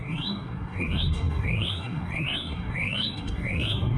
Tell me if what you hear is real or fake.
fake